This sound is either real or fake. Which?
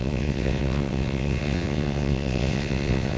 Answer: fake